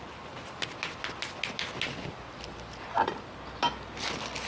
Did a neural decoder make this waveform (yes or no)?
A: no